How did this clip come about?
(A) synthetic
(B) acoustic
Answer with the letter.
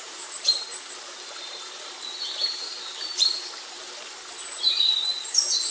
A